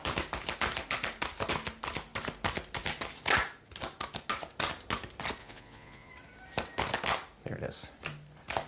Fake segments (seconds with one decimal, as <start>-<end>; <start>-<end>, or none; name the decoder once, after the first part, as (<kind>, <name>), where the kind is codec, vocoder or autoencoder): 5.4-6.1 (vocoder, Vocos)